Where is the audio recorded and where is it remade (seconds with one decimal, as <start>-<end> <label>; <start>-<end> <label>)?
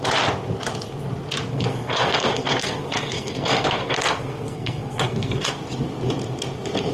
0.0-1.5 recorded; 1.5-5.6 remade; 5.6-6.9 recorded